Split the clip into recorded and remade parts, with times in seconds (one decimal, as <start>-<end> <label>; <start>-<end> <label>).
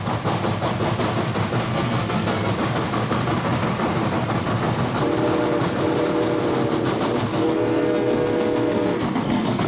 0.0-1.7 recorded; 1.7-2.5 remade; 2.5-7.3 recorded; 7.3-9.7 remade